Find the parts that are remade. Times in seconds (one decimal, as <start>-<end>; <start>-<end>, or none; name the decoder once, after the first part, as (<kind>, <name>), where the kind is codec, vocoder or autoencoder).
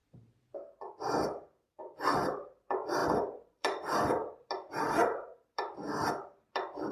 3.0-4.5 (vocoder, BigVGAN v2)